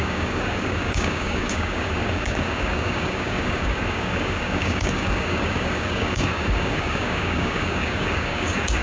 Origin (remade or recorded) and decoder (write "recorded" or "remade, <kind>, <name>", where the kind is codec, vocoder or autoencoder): remade, codec, DAC